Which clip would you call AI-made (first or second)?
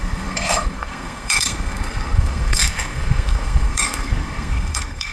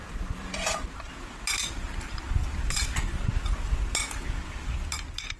first